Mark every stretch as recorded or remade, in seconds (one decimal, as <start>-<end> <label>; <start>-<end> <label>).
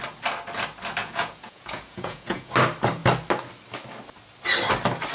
0.0-1.0 recorded; 1.0-2.5 remade; 2.5-5.1 recorded